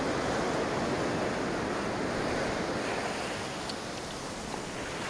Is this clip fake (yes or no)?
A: no